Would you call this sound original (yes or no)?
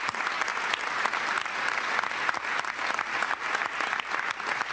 yes